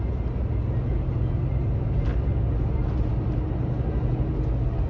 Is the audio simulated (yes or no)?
no